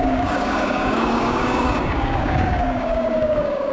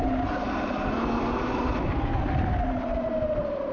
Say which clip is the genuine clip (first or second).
second